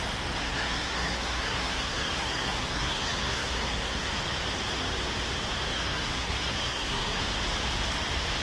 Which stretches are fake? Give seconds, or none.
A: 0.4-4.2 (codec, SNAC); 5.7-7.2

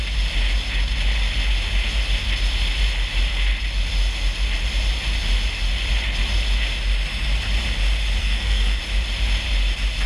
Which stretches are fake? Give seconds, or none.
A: 8.2-8.8 (codec, SNAC)